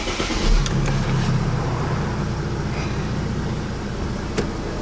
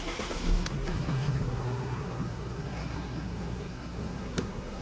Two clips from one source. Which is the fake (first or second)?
second